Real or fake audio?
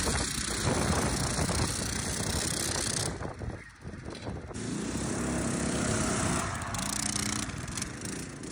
real